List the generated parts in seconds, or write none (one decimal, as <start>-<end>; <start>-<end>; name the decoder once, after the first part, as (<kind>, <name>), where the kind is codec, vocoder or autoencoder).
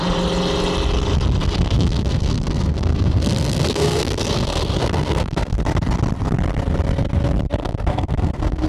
1.4-5.6 (codec, SNAC); 7.6-8.7